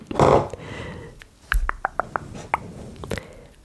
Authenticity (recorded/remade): recorded